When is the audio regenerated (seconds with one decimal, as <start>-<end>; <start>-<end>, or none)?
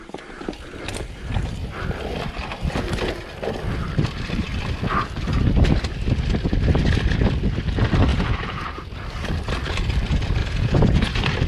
8.1-8.8; 10.4-11.1